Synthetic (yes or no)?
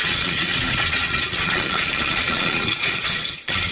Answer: yes